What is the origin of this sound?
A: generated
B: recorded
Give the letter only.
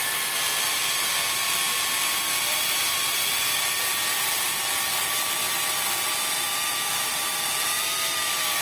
A